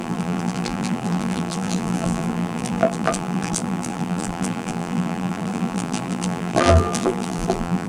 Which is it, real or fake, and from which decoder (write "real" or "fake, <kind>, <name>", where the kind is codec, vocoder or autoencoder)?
fake, vocoder, BigVGAN v2